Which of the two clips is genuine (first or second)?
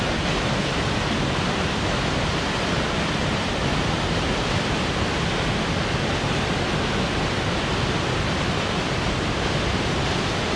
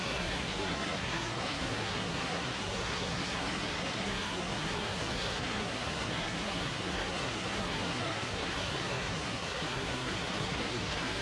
first